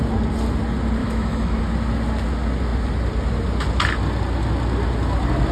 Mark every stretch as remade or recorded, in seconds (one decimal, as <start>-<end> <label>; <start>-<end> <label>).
0.0-1.0 recorded; 1.0-1.6 remade; 1.6-5.5 recorded